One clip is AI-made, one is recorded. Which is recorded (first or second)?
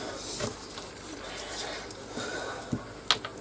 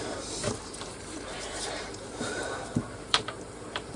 first